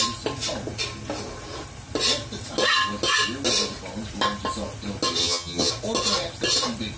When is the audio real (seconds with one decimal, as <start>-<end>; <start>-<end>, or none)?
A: 0.0-5.2; 5.7-7.0